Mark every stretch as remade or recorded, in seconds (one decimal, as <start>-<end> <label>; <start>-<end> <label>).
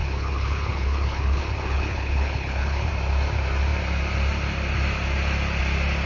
0.0-2.9 remade; 2.9-6.1 recorded